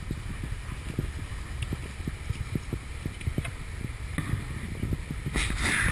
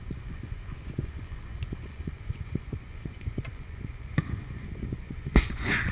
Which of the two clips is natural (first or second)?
first